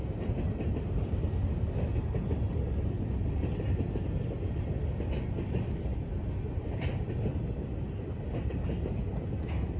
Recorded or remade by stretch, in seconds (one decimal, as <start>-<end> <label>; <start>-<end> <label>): 0.0-1.3 remade; 1.3-9.8 recorded